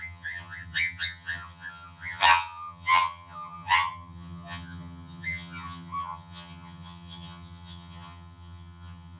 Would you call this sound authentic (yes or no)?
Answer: no